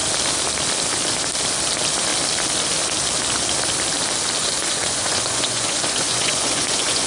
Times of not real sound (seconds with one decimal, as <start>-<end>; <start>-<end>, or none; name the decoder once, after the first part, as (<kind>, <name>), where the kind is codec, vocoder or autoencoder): 4.4-7.1 (vocoder, Vocos)